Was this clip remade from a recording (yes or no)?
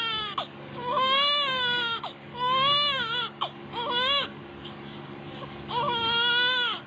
yes